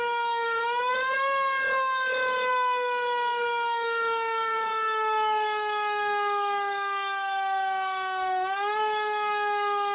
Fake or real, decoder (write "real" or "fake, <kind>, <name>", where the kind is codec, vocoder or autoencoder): fake, codec, DAC